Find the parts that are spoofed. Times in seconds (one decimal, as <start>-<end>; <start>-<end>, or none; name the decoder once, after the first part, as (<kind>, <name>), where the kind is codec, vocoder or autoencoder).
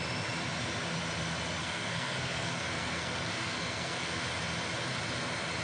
1.6-4.2 (codec, SNAC)